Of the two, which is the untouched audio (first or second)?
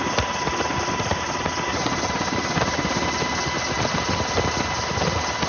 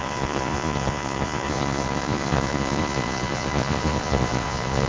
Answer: first